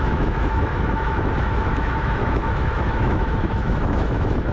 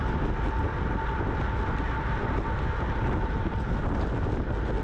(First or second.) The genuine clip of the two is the second